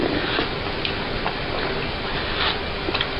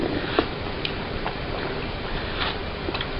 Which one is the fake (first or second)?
second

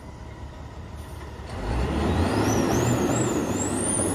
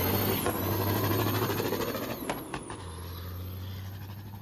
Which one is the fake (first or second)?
first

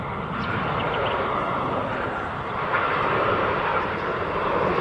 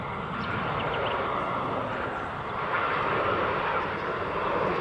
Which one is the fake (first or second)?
first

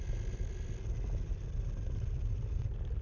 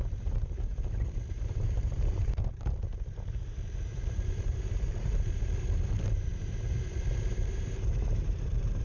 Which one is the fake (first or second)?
second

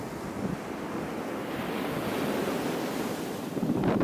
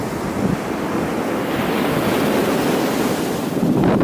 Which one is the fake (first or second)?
first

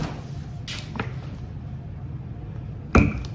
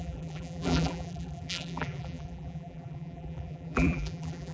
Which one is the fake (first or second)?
second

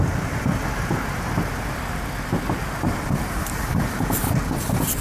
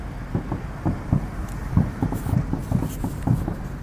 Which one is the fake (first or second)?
first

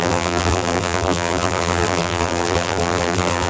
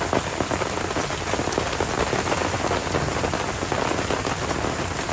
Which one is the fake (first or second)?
first